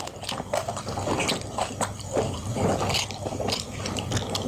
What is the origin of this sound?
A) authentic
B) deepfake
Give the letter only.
A